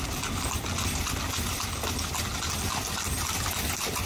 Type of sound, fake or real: real